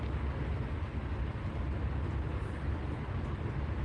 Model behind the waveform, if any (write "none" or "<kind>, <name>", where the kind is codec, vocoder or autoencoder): none